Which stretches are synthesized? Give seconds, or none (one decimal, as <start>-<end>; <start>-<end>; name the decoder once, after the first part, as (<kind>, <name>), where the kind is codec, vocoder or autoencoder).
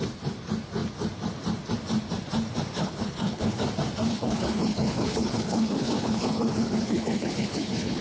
2.8-3.6 (codec, HILCodec); 4.1-8.0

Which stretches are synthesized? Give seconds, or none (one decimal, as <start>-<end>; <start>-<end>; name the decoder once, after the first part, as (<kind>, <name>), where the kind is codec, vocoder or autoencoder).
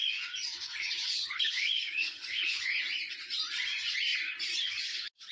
0.5-2.8 (codec, HILCodec)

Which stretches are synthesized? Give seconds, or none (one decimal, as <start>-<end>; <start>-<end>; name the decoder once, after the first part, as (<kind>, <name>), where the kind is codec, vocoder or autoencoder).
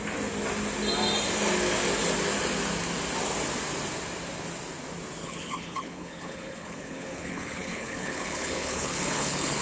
5.2-9.6 (codec, HILCodec)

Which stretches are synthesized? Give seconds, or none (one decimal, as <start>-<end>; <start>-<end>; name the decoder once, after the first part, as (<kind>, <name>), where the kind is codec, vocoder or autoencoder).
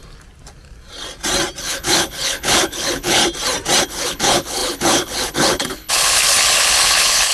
1.6-3.2 (codec, HILCodec); 3.8-7.3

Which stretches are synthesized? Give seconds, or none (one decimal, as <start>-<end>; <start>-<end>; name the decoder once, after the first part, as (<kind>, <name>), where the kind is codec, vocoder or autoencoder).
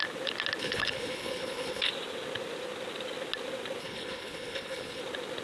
0.6-1.9 (codec, HILCodec); 3.8-5.0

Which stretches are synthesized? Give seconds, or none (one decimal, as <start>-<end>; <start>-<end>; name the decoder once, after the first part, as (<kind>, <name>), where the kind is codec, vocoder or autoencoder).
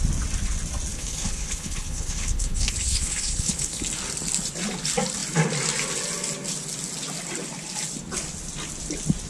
0.9-3.8 (codec, HILCodec)